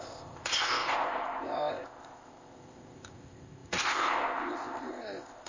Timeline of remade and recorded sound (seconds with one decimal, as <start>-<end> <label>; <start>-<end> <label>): 0.0-5.5 remade